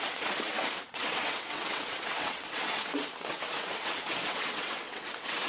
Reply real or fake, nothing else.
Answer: fake